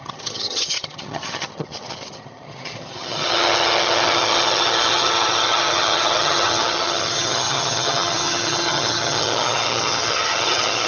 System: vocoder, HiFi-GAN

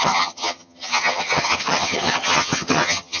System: vocoder, HiFi-GAN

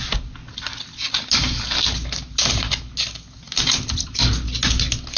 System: none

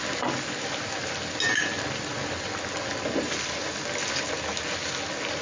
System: none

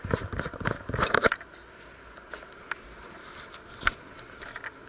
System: none